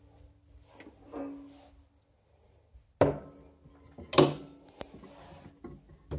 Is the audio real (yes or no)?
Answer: yes